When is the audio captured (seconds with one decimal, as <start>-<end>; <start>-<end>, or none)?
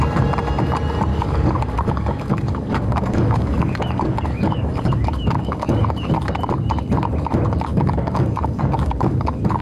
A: 0.0-1.1; 6.1-7.7